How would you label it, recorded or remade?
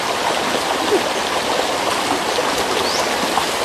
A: recorded